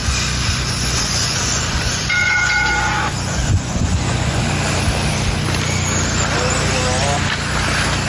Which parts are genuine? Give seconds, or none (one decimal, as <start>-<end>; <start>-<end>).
4.4-8.1